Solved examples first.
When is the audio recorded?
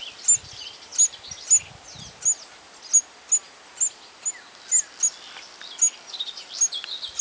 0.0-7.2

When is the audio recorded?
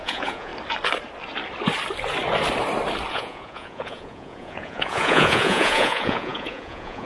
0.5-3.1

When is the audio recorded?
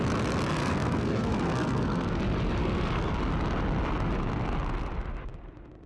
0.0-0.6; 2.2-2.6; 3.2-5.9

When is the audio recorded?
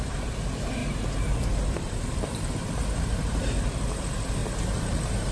0.0-0.8; 4.0-4.4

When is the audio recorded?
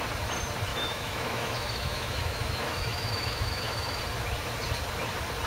0.0-0.7; 4.0-5.5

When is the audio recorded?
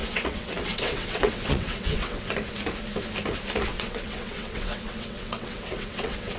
2.3-3.7